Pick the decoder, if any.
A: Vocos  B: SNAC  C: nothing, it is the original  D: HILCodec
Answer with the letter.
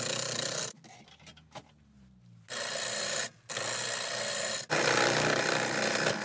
C